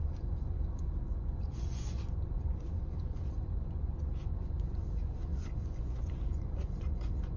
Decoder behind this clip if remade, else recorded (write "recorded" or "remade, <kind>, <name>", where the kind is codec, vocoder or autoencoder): remade, vocoder, Vocos